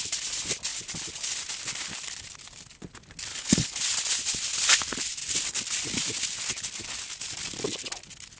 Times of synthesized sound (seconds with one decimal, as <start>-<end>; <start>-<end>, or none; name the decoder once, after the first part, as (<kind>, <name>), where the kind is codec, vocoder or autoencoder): 3.3-3.8 (codec, HILCodec)